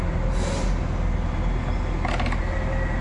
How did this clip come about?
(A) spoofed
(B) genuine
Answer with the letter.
B